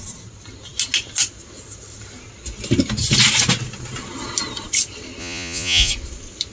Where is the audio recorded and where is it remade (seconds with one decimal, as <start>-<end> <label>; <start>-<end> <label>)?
0.0-5.2 recorded; 5.2-5.9 remade; 5.9-6.5 recorded